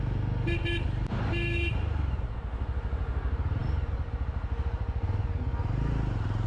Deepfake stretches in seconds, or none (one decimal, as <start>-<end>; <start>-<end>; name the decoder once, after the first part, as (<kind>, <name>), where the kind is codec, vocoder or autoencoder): none